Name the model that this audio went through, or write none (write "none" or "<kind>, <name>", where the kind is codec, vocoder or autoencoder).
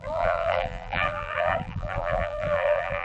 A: vocoder, BigVGAN v2